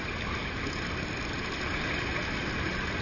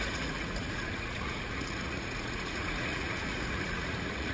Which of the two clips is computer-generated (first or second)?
second